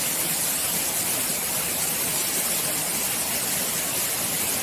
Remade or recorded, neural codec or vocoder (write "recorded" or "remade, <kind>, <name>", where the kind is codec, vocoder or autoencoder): recorded